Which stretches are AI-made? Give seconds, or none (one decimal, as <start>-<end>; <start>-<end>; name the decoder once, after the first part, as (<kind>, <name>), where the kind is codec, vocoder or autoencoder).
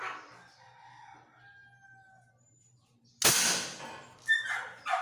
none